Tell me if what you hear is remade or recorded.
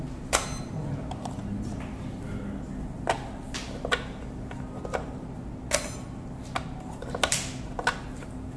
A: recorded